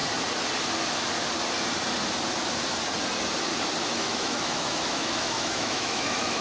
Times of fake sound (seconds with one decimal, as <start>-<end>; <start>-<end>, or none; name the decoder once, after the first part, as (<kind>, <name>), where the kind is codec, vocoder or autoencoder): 3.8-6.4 (autoencoder, DAC-VAE)